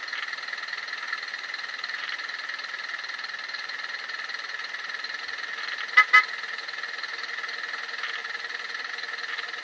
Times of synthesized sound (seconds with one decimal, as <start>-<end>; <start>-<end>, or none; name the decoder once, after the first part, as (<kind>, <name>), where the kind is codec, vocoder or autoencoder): 1.3-5.2 (vocoder, BigVGAN v2); 8.2-8.9